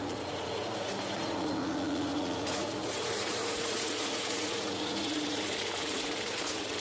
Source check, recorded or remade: remade